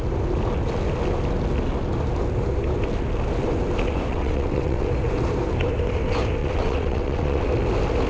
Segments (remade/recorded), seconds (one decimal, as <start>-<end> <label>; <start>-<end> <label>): 0.0-4.1 recorded; 4.1-4.9 remade; 4.9-6.4 recorded; 6.4-7.5 remade; 7.5-8.1 recorded